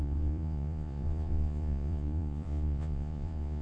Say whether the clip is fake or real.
fake